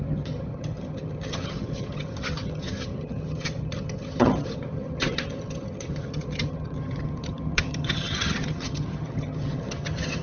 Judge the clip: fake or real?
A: fake